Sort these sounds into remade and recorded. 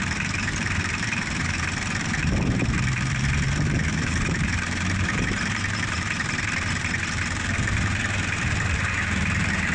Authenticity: remade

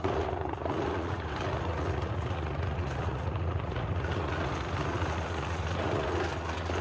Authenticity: remade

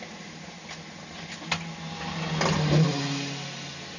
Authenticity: recorded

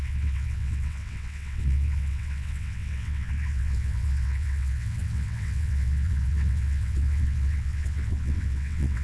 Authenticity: remade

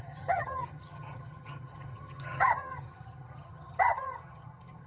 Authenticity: remade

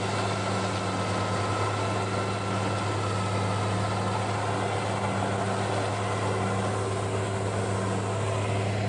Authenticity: recorded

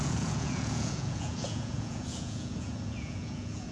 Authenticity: remade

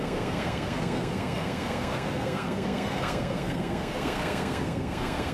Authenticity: remade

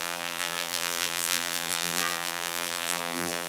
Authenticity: remade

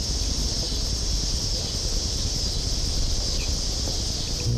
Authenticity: recorded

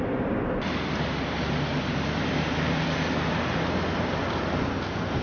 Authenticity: recorded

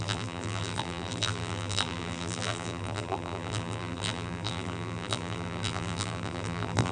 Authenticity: remade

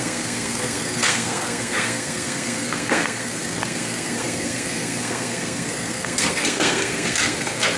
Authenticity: remade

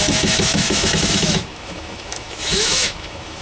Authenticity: remade